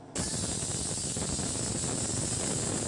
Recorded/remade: recorded